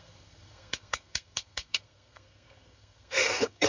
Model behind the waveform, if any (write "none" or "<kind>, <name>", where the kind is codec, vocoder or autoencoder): codec, SNAC